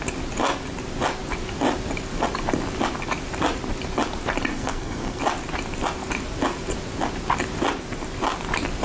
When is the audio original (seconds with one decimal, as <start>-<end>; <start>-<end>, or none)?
0.0-4.5; 5.2-8.8